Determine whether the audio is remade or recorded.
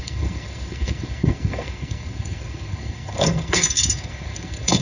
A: remade